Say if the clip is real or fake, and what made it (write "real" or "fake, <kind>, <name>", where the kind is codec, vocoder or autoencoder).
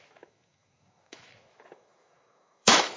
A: fake, autoencoder, DAC-VAE